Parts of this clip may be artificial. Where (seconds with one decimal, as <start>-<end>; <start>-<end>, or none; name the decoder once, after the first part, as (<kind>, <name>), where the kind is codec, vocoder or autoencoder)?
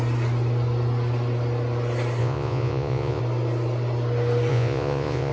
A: 2.2-3.2 (vocoder, Vocos); 4.5-5.3